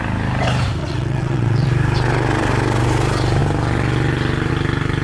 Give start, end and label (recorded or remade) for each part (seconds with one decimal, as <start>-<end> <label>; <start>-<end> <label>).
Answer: 0.0-0.8 recorded; 0.8-1.7 remade; 1.7-5.0 recorded